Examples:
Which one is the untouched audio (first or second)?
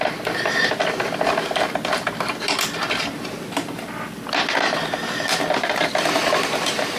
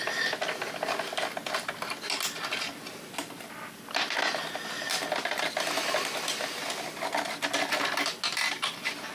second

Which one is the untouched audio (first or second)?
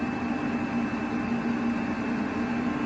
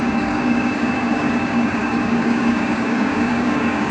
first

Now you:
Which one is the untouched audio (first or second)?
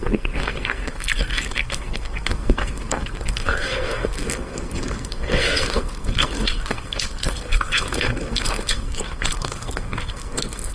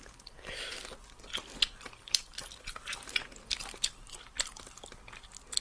second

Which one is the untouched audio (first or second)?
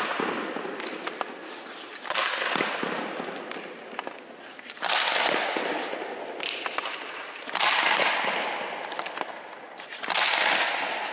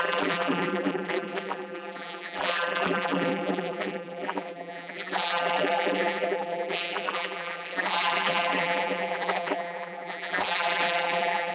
first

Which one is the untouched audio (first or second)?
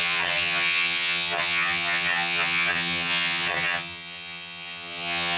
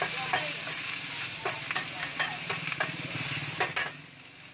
second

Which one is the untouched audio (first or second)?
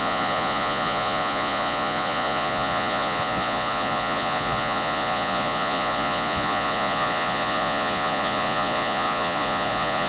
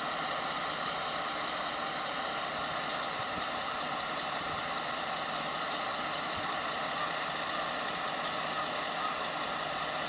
second